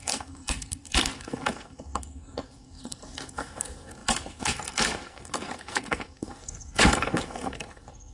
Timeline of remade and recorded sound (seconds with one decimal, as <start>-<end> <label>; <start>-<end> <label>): 0.0-8.1 remade